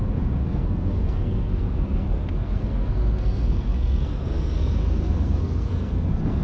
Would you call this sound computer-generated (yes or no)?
yes